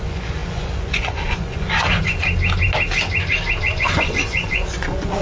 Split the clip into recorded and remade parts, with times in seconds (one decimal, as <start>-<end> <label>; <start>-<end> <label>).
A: 0.0-2.2 remade; 2.2-3.6 recorded; 3.6-5.2 remade